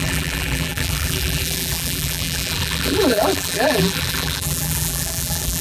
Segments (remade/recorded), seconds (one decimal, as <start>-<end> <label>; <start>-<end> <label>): 0.0-5.6 remade